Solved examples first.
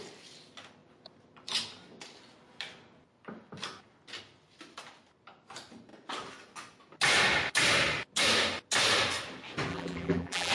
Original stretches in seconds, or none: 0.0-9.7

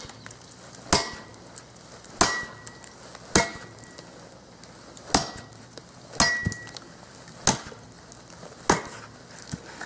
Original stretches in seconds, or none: 0.0-9.9

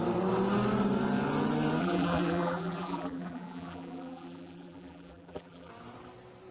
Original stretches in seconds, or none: 0.0-1.8; 5.7-6.5